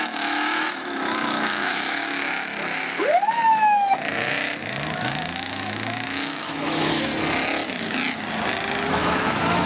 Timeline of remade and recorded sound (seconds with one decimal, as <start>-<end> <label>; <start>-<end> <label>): 0.0-7.1 remade; 7.1-8.9 recorded; 8.9-9.7 remade